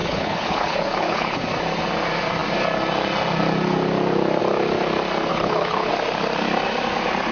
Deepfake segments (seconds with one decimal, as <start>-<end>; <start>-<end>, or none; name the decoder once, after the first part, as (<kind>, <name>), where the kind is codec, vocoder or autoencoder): 0.0-1.4 (codec, HILCodec); 5.3-5.9